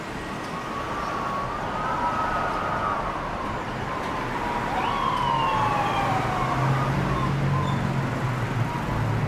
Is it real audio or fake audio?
real